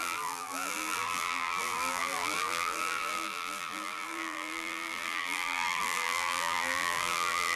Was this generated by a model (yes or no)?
yes